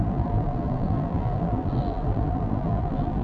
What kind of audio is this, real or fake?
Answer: fake